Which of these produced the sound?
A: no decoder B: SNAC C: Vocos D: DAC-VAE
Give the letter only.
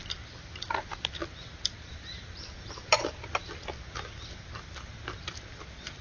A